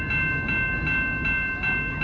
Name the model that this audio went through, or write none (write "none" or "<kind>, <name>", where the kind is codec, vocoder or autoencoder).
none